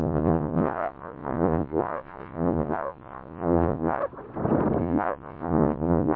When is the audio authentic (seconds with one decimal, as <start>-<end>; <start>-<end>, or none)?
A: 4.0-4.8